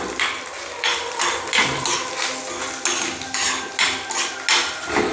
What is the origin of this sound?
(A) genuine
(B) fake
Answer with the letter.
A